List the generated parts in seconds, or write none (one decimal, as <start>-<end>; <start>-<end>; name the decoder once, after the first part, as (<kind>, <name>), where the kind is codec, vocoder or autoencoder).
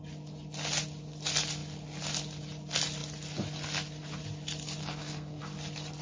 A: 4.8-5.4 (codec, SNAC)